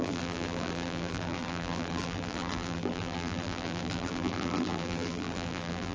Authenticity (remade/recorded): remade